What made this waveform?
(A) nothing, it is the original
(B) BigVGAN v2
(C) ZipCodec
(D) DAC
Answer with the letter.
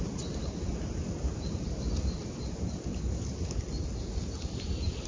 A